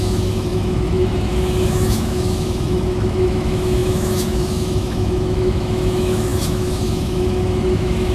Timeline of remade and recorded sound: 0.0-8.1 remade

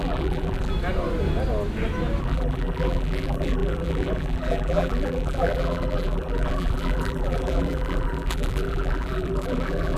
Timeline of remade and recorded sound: 0.0-0.7 remade; 0.7-2.2 recorded; 2.2-10.0 remade

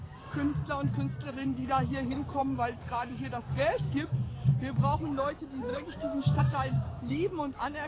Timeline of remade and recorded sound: 0.0-0.5 remade; 0.5-1.3 recorded; 1.3-7.9 remade

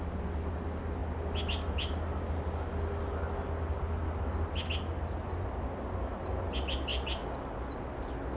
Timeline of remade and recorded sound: 0.0-8.4 recorded

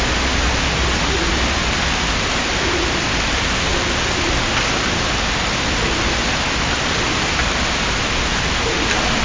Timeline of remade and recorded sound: 0.0-9.2 recorded

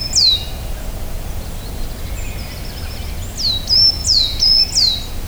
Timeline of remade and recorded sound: 0.0-4.0 recorded; 4.0-4.6 remade; 4.6-5.3 recorded

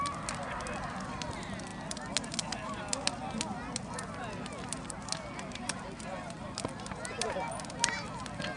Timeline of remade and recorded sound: 0.0-8.6 recorded